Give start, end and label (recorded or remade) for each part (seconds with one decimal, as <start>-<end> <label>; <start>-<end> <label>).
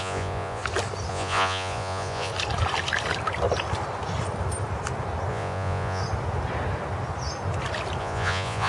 0.0-0.6 remade; 0.6-1.1 recorded; 1.1-2.3 remade; 2.3-5.3 recorded; 5.3-6.0 remade; 6.0-8.0 recorded; 8.0-8.7 remade